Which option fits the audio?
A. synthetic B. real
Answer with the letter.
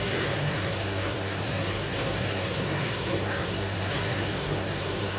A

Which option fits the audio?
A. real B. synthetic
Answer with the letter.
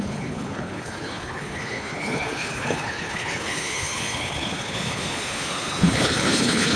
B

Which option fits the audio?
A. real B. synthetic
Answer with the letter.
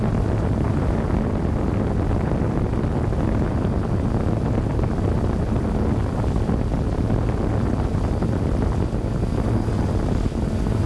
A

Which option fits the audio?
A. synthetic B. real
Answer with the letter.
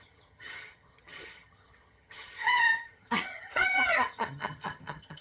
A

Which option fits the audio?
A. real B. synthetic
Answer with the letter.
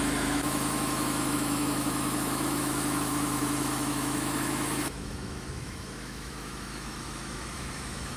B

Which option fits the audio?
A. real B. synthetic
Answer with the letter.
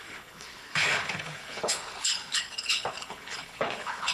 B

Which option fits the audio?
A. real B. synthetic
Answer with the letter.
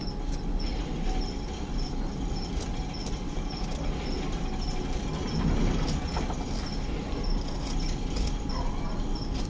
A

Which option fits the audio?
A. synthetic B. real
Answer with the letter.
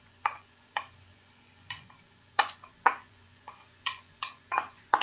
A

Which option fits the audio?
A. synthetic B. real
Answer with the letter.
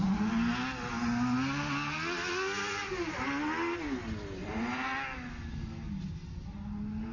B